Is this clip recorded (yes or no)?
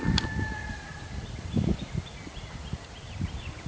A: no